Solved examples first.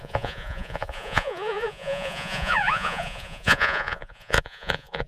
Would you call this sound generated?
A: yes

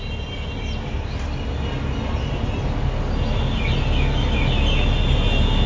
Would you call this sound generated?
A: no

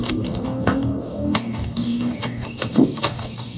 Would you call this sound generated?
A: yes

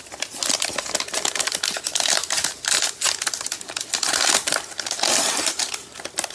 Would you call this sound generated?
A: no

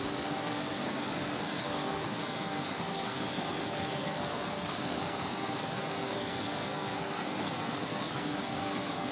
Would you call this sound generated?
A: yes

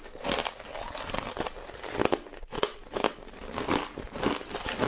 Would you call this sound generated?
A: no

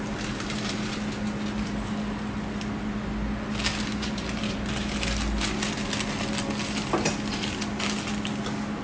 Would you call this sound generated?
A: no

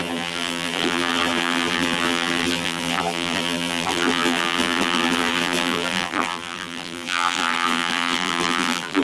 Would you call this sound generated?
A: yes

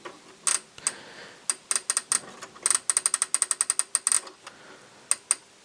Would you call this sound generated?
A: no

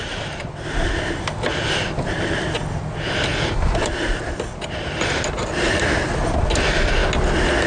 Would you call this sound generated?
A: no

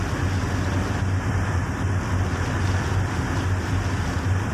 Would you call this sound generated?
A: no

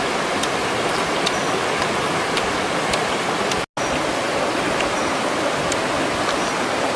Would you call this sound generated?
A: no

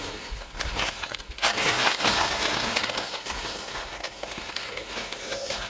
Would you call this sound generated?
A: yes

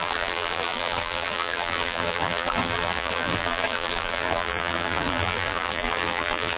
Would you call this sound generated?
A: yes